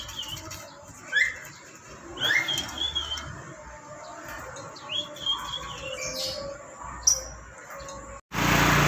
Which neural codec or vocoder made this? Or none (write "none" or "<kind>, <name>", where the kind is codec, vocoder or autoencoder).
none